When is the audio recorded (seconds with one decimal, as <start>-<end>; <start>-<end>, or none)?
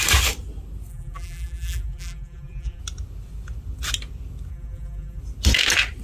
0.0-0.9; 2.8-4.5; 5.2-6.0